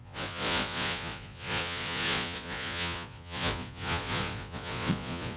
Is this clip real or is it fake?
fake